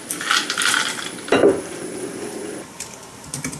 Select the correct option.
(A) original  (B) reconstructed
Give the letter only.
B